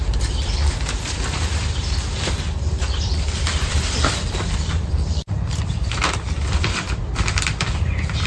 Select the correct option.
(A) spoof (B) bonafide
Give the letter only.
A